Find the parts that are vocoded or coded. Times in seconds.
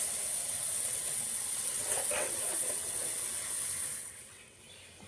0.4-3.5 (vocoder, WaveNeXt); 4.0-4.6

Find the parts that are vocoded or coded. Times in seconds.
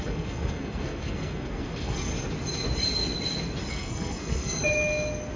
0.0-2.1 (codec, SNAC); 3.7-4.6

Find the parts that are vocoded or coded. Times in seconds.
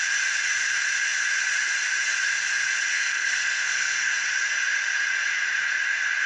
2.9-4.1 (codec, SNAC)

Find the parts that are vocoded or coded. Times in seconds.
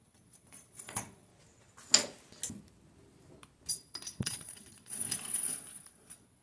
0.0-1.3 (vocoder, Vocos); 3.7-6.4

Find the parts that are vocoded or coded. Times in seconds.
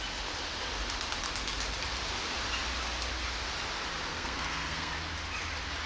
4.1-4.9 (codec, SNAC)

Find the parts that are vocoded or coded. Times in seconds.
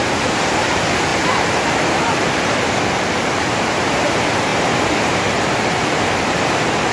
0.0-6.9 (vocoder, BigVGAN v2)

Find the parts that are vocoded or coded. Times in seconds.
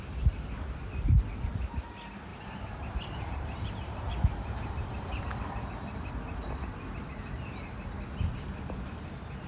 2.3-6.1 (vocoder, BigVGAN v2)